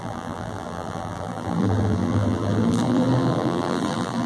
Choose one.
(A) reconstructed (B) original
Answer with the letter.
A